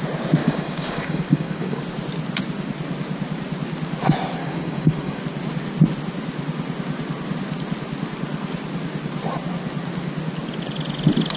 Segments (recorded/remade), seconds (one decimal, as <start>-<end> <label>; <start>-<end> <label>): 0.0-0.4 recorded; 0.4-1.8 remade; 1.8-4.4 recorded; 4.4-5.2 remade; 5.2-11.4 recorded